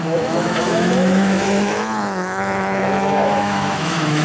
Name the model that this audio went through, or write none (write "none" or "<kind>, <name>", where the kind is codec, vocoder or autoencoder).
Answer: autoencoder, DAC-VAE